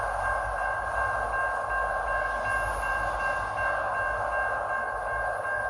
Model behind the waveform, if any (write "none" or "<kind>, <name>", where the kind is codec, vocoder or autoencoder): none